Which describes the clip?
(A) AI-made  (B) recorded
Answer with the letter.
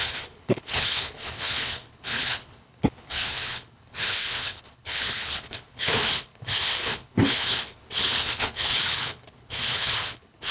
A